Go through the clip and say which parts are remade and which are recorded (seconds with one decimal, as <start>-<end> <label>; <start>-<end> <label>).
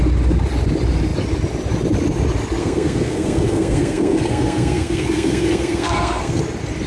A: 0.0-2.6 recorded; 2.6-6.4 remade; 6.4-6.9 recorded